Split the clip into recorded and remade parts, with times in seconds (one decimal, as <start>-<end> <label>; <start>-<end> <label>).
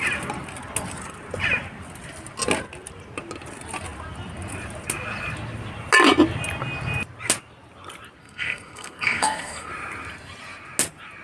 0.0-8.2 recorded; 8.2-9.7 remade; 9.7-11.2 recorded